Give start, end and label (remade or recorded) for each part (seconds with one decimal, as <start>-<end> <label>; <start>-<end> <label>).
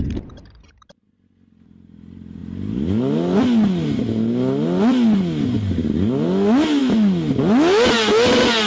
0.0-8.7 recorded